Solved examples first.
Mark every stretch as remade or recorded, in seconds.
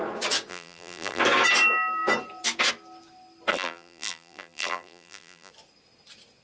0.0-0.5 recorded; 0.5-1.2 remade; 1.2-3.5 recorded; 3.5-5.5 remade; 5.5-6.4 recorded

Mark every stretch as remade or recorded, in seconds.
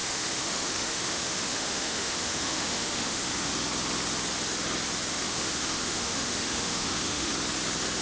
0.0-3.5 remade; 3.5-5.1 recorded; 5.1-7.3 remade; 7.3-8.0 recorded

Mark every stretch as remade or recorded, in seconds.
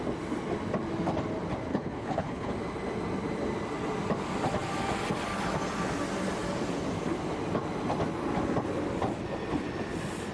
0.0-1.7 recorded; 1.7-2.5 remade; 2.5-10.3 recorded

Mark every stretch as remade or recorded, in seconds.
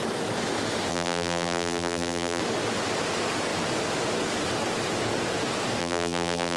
0.0-0.9 recorded; 0.9-2.4 remade; 2.4-5.8 recorded; 5.8-6.6 remade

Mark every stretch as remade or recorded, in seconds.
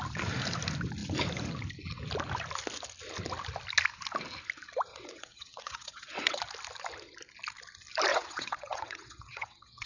0.0-4.9 recorded; 4.9-6.4 remade; 6.4-8.1 recorded; 8.1-9.9 remade